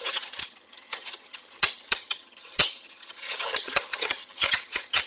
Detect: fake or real fake